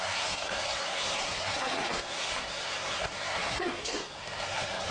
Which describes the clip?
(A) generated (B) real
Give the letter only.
A